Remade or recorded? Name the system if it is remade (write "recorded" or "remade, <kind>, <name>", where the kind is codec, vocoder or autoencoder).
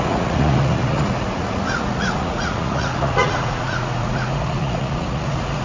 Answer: remade, vocoder, Vocos